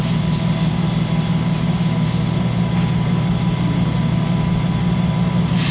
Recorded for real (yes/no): yes